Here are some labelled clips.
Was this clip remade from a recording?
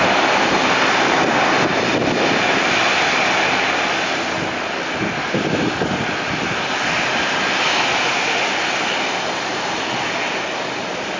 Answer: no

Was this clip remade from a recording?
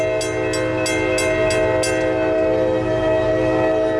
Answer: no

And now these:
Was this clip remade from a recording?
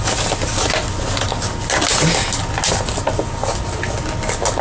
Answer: no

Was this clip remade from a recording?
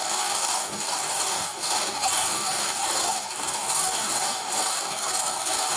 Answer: yes